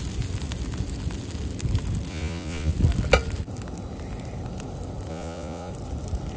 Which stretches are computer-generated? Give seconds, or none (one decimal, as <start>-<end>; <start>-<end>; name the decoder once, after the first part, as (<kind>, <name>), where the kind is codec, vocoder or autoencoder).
2.1-2.7 (vocoder, Vocos); 5.1-5.7